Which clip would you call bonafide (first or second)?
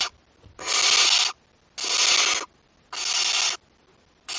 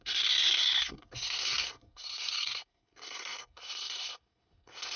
first